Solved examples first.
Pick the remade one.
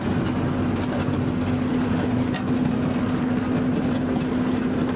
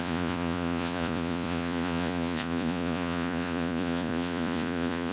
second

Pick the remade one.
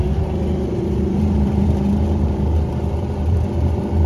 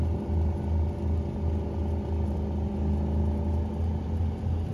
first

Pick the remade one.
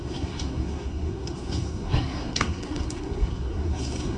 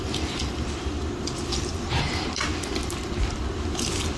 first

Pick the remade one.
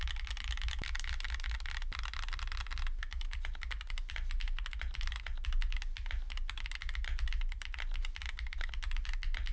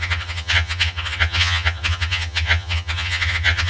second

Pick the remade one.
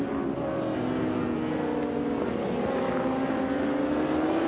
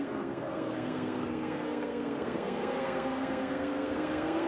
second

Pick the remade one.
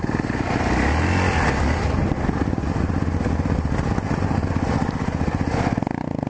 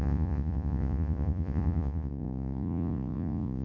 second